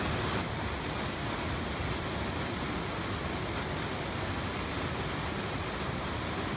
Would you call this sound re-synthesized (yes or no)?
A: no